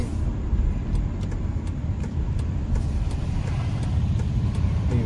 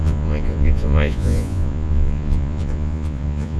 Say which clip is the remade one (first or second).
second